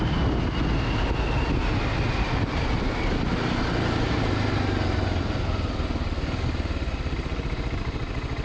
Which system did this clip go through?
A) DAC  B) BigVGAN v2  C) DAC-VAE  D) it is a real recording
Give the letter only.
D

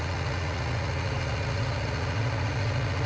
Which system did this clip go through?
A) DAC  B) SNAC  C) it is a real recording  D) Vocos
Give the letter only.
D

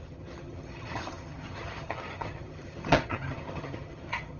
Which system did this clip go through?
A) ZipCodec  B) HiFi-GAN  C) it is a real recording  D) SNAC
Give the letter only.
B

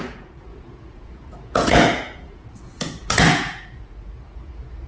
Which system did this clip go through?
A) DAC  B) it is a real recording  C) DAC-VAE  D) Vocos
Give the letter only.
D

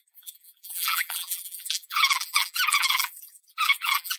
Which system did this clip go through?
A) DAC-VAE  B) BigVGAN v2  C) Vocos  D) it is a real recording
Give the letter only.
B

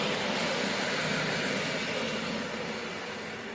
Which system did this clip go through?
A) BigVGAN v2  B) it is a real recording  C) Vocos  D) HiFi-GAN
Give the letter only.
B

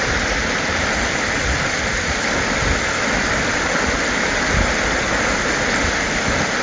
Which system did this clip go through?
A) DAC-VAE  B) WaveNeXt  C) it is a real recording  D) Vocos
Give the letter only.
C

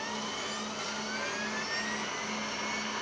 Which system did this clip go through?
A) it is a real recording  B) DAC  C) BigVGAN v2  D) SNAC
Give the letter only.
A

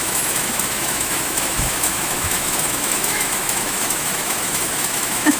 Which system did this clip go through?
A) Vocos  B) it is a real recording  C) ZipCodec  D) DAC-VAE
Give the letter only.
D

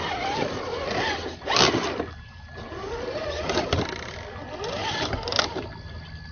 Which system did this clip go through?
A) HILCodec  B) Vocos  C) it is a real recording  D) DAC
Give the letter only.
C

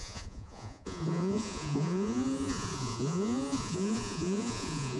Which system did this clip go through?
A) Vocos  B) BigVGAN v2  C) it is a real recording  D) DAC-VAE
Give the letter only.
A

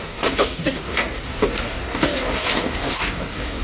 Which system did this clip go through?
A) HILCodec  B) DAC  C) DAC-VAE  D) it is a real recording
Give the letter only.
B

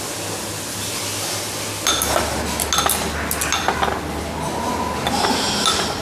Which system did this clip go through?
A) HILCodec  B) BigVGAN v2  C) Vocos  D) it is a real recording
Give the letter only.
D